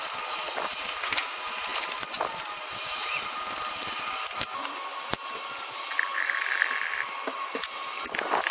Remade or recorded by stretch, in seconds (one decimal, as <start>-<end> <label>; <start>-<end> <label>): 0.0-1.7 recorded; 1.7-2.4 remade; 2.4-8.5 recorded